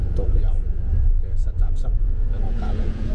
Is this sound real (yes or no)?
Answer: no